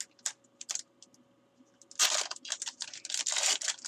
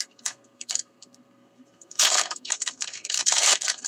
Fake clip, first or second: second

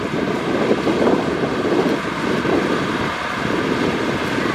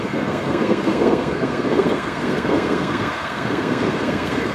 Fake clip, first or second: second